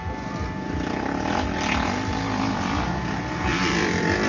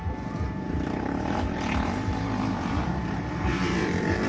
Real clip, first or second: first